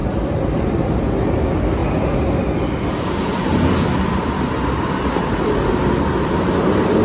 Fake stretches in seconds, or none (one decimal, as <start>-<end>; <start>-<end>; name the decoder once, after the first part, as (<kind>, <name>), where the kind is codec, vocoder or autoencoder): 0.0-0.8 (vocoder, BigVGAN v2)